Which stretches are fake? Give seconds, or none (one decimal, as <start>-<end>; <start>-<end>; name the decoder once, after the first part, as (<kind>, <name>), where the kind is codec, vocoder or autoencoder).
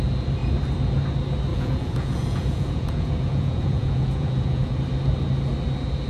1.5-4.8 (vocoder, Vocos)